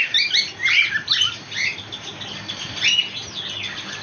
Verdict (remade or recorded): recorded